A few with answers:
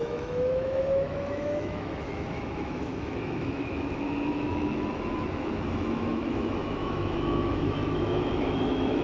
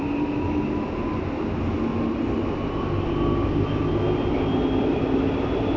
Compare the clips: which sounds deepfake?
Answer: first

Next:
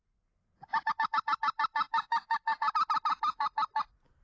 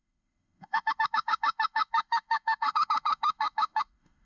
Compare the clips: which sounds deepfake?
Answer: second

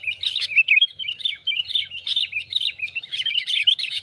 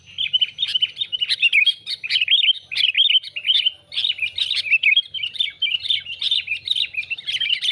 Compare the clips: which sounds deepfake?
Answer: first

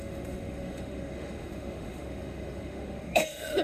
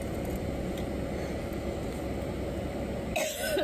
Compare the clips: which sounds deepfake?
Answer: first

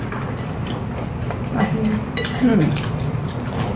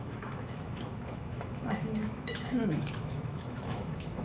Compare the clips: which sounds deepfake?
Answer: second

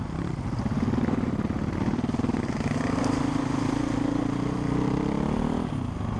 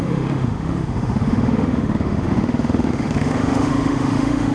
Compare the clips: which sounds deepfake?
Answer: second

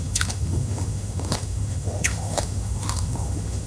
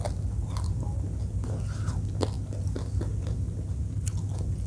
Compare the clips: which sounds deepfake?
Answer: first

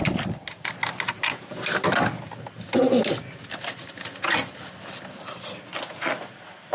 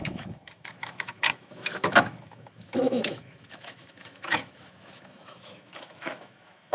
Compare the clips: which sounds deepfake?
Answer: second